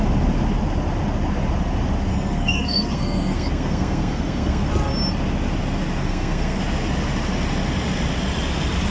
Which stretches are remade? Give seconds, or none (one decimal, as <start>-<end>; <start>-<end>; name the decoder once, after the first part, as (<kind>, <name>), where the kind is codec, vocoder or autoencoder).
2.1-4.7 (codec, SNAC); 6.0-6.6